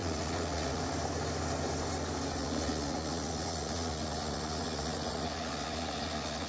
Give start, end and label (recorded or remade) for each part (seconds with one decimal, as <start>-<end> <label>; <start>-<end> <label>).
0.0-0.8 remade; 0.8-2.4 recorded; 2.4-6.5 remade